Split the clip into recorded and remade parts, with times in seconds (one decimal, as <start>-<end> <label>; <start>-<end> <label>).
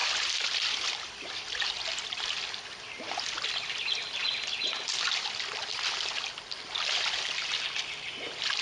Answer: 0.0-3.2 remade; 3.2-8.6 recorded